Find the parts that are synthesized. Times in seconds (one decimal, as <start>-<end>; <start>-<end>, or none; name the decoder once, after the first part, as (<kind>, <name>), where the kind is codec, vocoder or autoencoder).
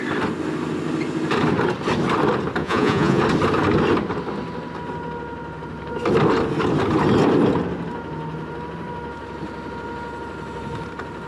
2.6-3.2 (vocoder, Vocos)